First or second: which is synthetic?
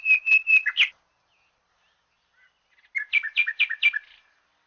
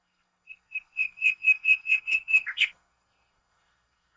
second